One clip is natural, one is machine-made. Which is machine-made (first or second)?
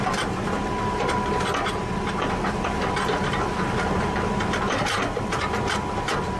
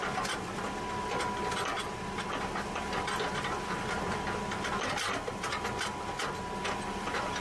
first